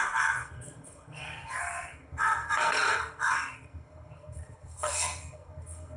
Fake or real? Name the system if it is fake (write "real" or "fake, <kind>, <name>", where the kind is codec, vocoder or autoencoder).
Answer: fake, codec, SNAC